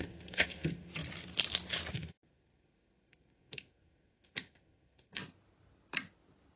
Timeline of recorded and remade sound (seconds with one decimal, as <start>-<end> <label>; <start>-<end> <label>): 0.0-0.9 remade; 0.9-1.9 recorded; 1.9-5.2 remade; 5.2-6.6 recorded